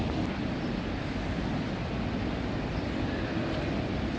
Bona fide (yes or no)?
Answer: yes